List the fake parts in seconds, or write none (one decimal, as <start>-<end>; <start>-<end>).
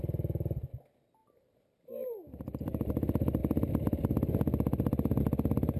1.2-2.9